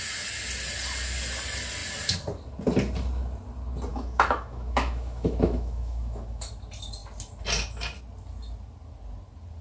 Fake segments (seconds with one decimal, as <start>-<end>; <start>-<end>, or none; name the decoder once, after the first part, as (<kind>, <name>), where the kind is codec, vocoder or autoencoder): 3.9-6.5 (autoencoder, DAC-VAE)